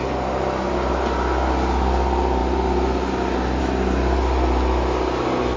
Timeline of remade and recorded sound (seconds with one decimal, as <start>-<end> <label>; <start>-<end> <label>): 0.0-5.6 recorded